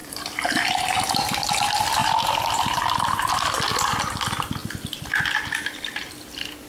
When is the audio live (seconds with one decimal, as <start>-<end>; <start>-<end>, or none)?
0.7-2.0; 3.3-4.6; 5.1-6.7